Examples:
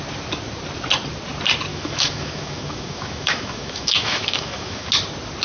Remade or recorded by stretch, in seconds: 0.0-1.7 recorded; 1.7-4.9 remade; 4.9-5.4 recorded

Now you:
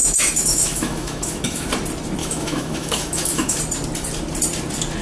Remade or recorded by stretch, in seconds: 0.0-1.7 remade; 1.7-2.2 recorded; 2.2-3.6 remade; 3.6-5.0 recorded

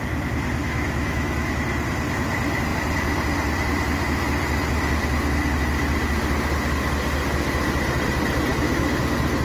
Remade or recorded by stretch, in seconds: 0.0-0.6 recorded; 0.6-1.5 remade; 1.5-8.5 recorded; 8.5-9.0 remade; 9.0-9.4 recorded

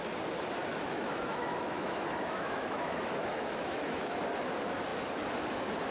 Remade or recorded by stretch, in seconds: 0.0-0.6 recorded; 0.6-4.1 remade; 4.1-5.9 recorded

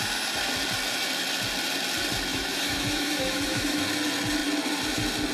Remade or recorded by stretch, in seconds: 0.0-2.3 recorded; 2.3-3.8 remade; 3.8-5.3 recorded